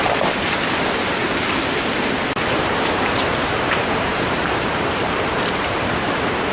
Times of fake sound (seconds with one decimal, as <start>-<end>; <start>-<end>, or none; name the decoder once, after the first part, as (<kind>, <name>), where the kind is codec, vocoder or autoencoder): 0.0-1.2 (vocoder, BigVGAN v2); 2.6-6.5